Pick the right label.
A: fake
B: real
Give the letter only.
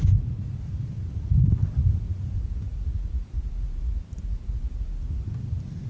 B